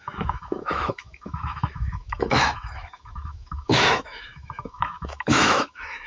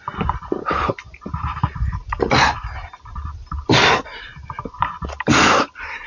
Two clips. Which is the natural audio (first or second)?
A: second